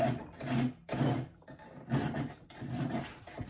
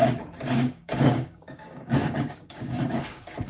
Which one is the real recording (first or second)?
first